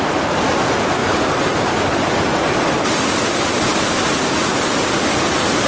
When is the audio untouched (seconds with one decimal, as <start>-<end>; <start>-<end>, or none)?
0.0-5.7